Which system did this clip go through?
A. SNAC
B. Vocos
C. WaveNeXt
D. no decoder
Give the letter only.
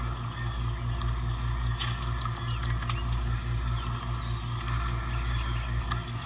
D